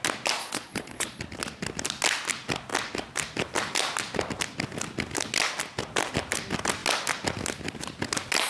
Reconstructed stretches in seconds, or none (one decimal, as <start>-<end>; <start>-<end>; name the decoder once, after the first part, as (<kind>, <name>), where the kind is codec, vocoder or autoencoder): 0.4-1.2 (vocoder, Vocos)